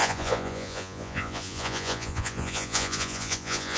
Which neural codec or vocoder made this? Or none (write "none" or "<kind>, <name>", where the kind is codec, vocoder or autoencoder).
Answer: vocoder, Vocos